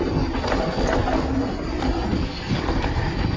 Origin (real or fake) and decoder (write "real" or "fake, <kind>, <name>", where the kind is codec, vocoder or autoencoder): real